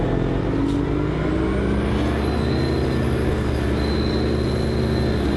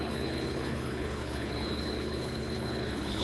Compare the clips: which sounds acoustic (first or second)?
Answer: first